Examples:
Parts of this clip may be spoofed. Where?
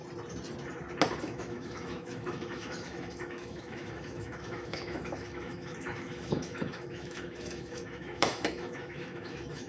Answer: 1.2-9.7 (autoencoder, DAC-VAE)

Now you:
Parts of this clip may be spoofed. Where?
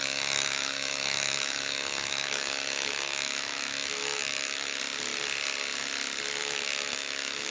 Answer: 0.0-4.8 (autoencoder, DAC-VAE); 6.4-7.5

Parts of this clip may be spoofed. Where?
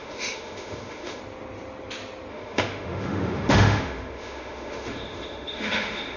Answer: 0.0-1.2 (autoencoder, DAC-VAE); 2.3-6.2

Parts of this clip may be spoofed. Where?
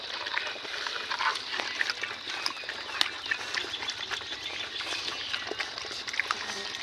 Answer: none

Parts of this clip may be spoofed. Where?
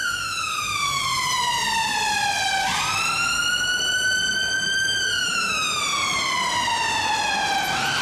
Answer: 0.0-1.0 (autoencoder, DAC-VAE); 5.2-5.8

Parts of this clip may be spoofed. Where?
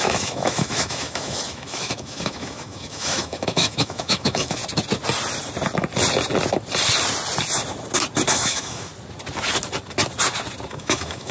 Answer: 0.0-4.6 (autoencoder, DAC-VAE); 8.3-8.9; 10.7-11.3